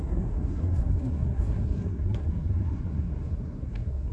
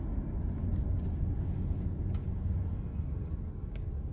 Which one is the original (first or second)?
second